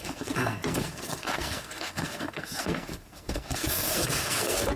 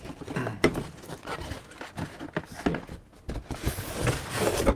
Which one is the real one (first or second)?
second